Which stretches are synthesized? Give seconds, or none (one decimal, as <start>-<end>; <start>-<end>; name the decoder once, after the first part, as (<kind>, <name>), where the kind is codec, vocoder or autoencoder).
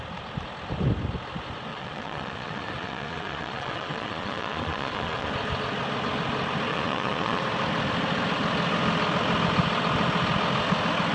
1.7-5.3 (vocoder, Vocos); 6.7-7.4